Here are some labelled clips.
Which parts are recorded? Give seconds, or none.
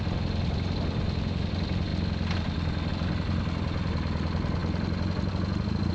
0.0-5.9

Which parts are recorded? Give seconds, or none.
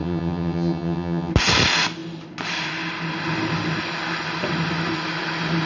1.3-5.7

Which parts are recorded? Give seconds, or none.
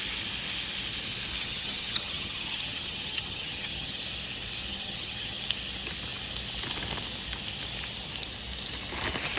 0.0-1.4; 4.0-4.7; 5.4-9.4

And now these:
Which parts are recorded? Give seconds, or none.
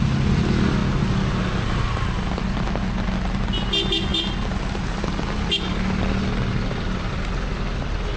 0.0-8.2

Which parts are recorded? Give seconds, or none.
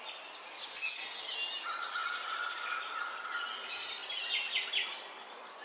0.0-5.6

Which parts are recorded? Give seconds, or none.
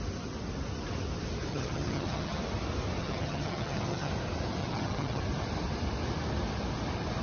0.0-1.5; 2.4-3.0; 4.1-4.6; 5.2-7.2